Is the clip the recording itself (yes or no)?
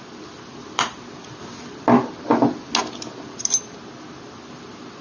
yes